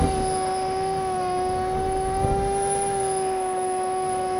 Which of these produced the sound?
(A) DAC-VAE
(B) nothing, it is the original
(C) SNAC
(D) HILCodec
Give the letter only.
A